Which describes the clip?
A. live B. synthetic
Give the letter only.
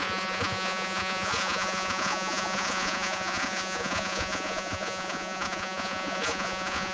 B